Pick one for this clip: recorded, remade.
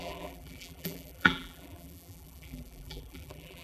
remade